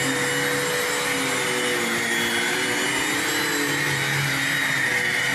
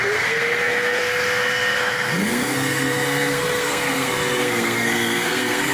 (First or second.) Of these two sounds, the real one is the first